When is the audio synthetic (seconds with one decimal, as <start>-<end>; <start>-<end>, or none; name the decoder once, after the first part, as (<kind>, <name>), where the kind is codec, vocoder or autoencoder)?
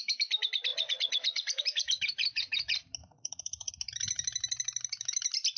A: 0.7-1.6 (vocoder, Vocos); 3.0-3.7